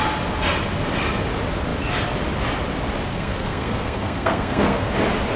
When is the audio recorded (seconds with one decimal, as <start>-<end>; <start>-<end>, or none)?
0.0-3.1; 4.9-5.4